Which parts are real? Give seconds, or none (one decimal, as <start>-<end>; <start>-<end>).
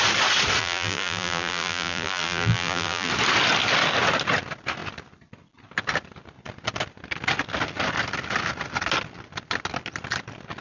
0.0-0.6; 3.1-10.6